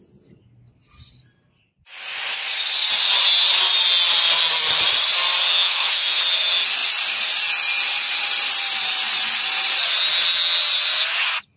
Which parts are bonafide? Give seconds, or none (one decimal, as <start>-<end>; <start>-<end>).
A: 0.0-5.5; 6.2-11.6